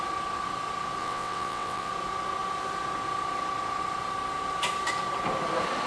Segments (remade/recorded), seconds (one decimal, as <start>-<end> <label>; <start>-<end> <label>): 0.0-1.0 recorded; 1.0-1.9 remade; 1.9-5.9 recorded